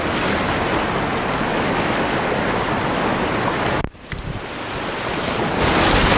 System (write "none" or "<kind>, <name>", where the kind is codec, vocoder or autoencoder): none